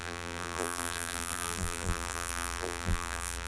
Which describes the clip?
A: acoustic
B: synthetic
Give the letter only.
B